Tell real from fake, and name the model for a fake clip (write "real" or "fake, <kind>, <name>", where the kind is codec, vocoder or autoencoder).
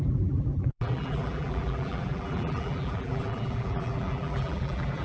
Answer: fake, vocoder, BigVGAN v2